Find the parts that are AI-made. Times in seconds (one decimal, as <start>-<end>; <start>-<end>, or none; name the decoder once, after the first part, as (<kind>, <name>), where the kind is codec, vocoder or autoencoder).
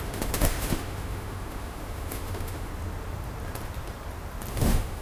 0.0-2.7 (autoencoder, DAC-VAE); 4.5-5.0